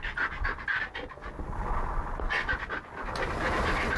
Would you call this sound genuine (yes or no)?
yes